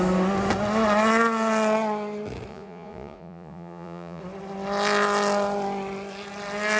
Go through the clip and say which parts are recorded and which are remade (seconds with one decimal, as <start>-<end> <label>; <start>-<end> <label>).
0.0-2.5 recorded; 2.5-4.2 remade; 4.2-6.8 recorded